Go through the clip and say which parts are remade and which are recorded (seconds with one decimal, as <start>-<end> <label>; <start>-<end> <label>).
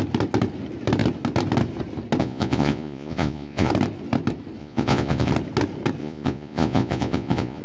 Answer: 0.0-2.2 recorded; 2.2-3.7 remade; 3.7-4.6 recorded; 4.6-5.3 remade; 5.3-6.0 recorded; 6.0-7.6 remade